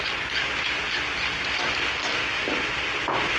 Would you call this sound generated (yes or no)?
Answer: no